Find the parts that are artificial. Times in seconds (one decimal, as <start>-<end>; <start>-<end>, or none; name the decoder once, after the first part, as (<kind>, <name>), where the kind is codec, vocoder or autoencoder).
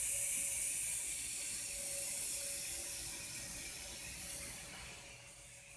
none